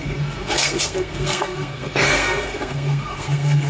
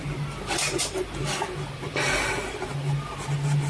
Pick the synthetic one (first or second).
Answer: first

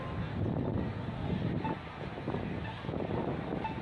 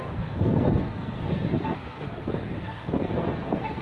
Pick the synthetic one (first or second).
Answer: second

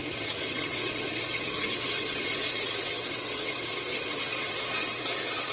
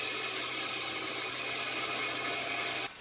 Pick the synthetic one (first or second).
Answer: first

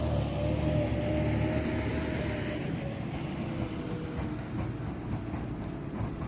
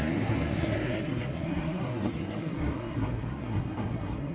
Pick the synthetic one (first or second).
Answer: second